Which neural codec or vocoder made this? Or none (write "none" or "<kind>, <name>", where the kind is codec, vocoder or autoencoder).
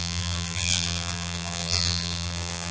vocoder, BigVGAN v2